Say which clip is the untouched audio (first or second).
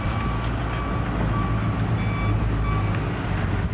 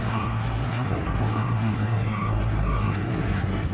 first